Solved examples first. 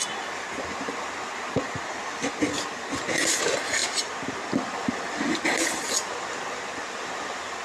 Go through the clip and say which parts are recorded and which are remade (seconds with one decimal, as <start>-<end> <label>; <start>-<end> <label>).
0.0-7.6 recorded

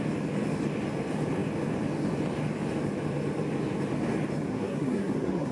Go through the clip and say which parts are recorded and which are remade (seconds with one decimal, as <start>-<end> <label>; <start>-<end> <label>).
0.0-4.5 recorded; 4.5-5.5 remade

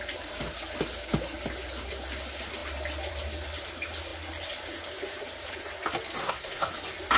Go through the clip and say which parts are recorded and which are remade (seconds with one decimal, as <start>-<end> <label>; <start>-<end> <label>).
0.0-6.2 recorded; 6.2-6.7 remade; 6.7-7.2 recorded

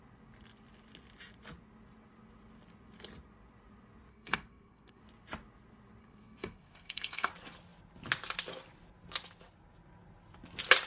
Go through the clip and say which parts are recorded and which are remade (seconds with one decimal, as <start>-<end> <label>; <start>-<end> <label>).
0.0-4.1 recorded; 4.1-5.0 remade; 5.0-6.0 recorded; 6.0-7.3 remade; 7.3-10.9 recorded

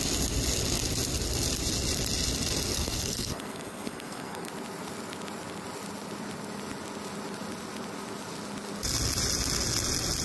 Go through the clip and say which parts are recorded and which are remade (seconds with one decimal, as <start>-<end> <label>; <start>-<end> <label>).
0.0-2.7 recorded; 2.7-4.5 remade; 4.5-10.2 recorded